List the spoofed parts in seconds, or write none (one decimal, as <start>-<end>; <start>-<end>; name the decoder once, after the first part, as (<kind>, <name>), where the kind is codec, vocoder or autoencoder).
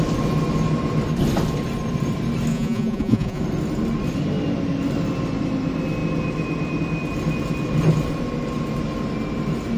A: 2.5-3.4 (vocoder, Vocos)